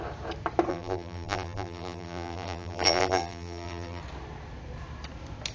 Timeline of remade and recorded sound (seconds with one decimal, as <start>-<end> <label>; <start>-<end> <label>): 0.0-0.7 recorded; 0.7-4.0 remade; 4.0-5.5 recorded